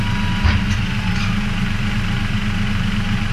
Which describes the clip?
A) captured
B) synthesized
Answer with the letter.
A